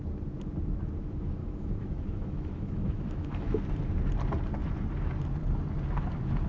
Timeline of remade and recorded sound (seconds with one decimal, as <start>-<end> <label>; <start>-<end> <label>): 0.0-1.4 recorded; 1.4-3.6 remade; 3.6-6.5 recorded